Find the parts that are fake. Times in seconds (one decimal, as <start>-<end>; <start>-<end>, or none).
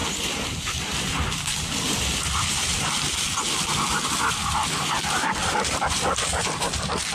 none